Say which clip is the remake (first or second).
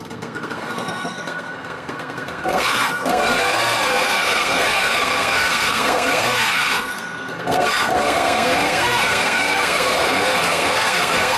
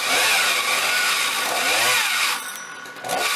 first